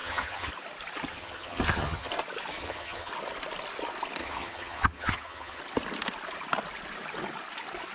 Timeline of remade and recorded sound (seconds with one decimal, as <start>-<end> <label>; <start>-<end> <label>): 0.0-0.5 remade; 0.5-1.1 recorded; 1.1-2.1 remade; 2.1-2.6 recorded; 2.6-3.1 remade; 3.1-4.2 recorded; 4.2-5.6 remade; 5.6-7.9 recorded